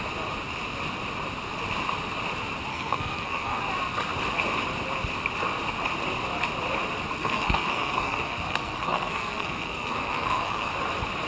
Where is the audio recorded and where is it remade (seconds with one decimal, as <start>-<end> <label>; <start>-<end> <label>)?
0.0-2.7 recorded; 2.7-3.6 remade; 3.6-7.2 recorded; 7.2-10.7 remade; 10.7-11.3 recorded